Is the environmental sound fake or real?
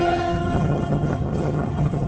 fake